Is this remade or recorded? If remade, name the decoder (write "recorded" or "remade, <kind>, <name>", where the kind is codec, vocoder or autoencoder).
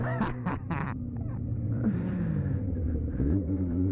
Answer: remade, vocoder, BigVGAN v2